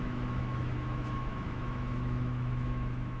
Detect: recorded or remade remade